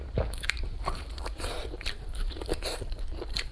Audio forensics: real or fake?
fake